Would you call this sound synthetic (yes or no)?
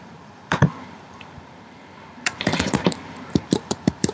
yes